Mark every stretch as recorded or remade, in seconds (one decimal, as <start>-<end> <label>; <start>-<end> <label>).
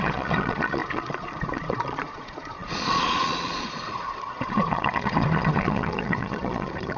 0.0-7.0 remade